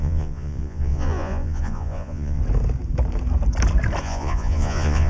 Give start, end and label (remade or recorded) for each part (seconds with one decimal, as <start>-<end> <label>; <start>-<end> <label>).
0.0-2.4 remade; 2.4-4.0 recorded; 4.0-5.1 remade